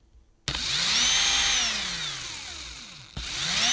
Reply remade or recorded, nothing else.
recorded